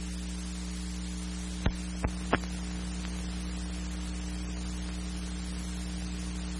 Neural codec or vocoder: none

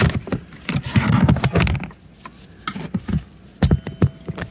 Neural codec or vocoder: none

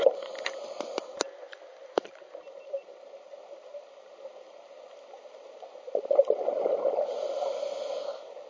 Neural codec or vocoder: none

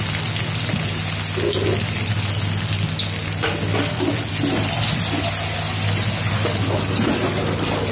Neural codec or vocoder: none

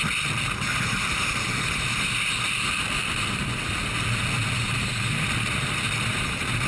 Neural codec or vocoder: none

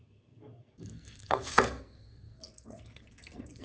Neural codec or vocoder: codec, SNAC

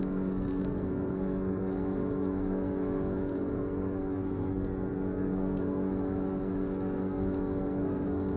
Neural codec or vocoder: codec, SNAC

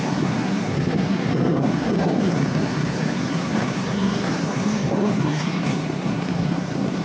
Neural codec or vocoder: codec, SNAC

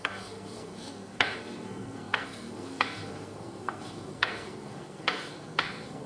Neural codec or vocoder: codec, SNAC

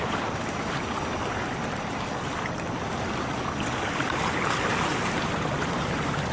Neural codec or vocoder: none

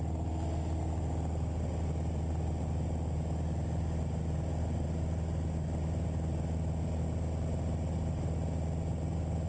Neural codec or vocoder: none